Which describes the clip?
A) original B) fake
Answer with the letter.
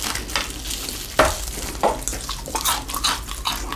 A